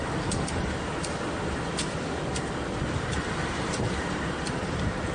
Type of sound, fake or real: real